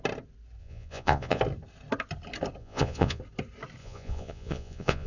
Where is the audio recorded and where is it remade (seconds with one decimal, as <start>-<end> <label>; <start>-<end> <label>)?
0.0-0.6 recorded; 0.6-1.4 remade; 1.4-2.6 recorded; 2.6-3.2 remade; 3.2-3.8 recorded; 3.8-5.1 remade